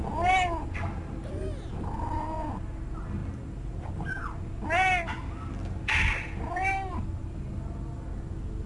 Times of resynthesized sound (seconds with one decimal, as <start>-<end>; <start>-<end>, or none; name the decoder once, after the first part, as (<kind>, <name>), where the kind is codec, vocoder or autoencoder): none